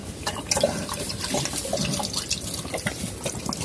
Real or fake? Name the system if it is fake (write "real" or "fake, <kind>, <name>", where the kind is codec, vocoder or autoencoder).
real